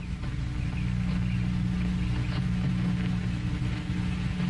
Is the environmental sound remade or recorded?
recorded